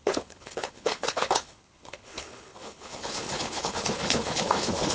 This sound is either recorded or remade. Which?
remade